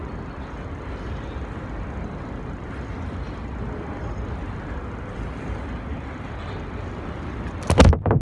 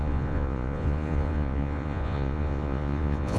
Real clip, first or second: first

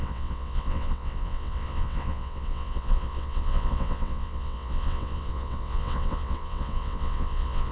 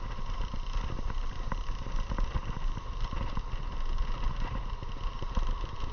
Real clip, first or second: second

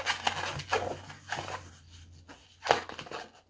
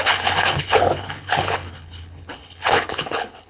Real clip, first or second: first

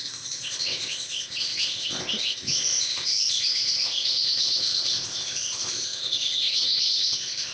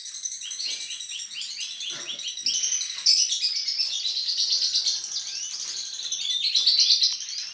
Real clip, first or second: second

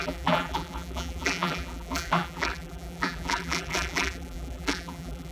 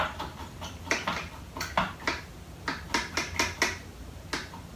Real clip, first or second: second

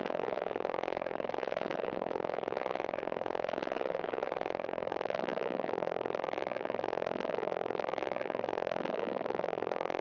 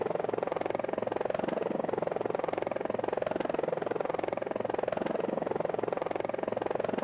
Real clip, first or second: second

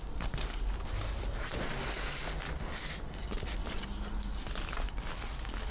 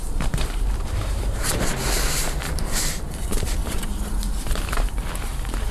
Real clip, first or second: first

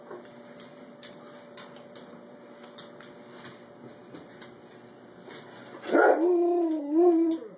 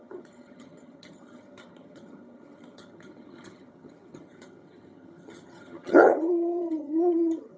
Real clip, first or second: first